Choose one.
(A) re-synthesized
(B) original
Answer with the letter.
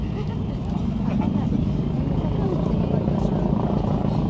B